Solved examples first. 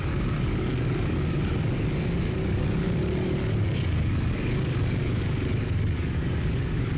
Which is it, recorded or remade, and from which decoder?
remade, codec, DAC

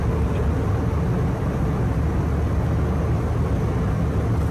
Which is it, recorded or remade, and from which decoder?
recorded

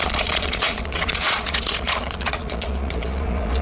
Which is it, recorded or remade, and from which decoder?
remade, vocoder, Vocos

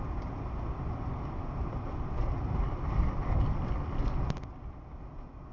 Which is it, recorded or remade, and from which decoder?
recorded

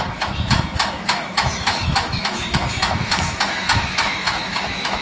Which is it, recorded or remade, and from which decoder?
remade, autoencoder, DAC-VAE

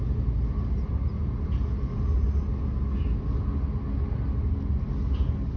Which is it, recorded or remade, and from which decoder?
recorded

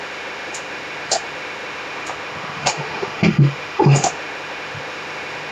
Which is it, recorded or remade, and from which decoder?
remade, autoencoder, DAC-VAE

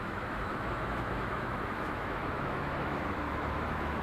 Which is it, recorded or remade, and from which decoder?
remade, autoencoder, DAC-VAE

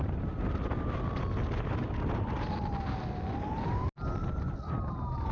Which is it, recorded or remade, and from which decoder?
recorded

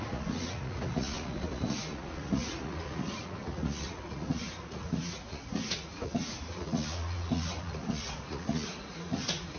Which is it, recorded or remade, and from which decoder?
remade, vocoder, Vocos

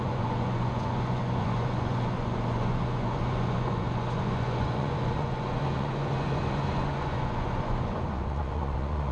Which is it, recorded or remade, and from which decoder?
remade, vocoder, Vocos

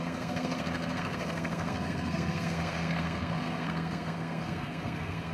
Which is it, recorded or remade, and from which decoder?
remade, codec, SNAC